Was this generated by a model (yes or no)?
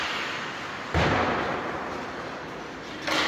no